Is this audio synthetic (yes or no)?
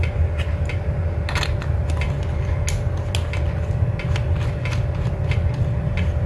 no